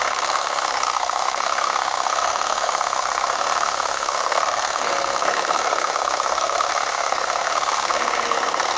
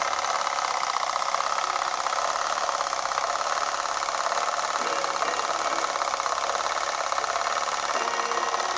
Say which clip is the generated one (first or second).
first